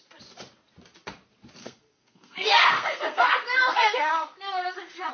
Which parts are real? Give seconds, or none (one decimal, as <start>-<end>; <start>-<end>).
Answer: 0.0-1.6